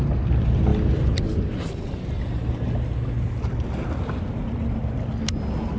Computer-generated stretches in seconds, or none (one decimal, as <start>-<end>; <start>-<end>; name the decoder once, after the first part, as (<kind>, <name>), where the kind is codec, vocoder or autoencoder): none